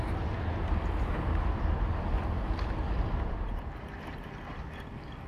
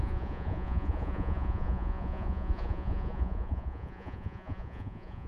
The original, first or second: first